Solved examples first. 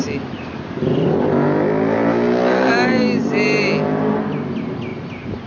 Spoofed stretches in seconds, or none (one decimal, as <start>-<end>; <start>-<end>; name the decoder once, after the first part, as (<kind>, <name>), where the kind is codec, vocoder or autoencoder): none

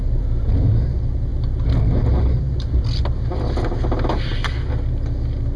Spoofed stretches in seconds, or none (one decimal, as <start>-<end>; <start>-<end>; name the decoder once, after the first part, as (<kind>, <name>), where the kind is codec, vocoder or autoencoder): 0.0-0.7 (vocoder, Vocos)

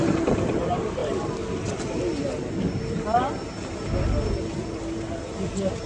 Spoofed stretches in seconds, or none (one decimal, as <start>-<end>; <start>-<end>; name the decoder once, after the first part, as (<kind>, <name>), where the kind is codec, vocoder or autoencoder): none

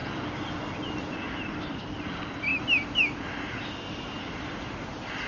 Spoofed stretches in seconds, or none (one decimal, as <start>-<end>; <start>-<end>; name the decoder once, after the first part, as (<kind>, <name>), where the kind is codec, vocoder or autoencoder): none